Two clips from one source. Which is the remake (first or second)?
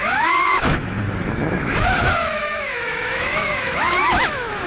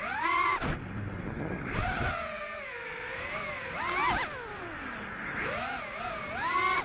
first